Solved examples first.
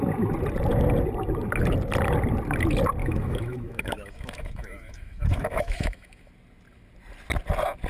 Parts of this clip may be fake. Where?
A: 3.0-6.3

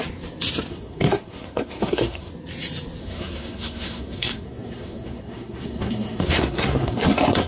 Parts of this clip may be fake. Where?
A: 0.7-2.3; 3.0-7.5

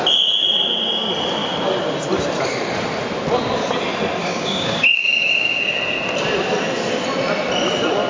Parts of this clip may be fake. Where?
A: 4.2-5.8